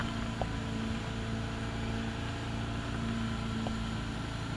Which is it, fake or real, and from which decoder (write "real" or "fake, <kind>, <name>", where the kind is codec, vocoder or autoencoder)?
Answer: real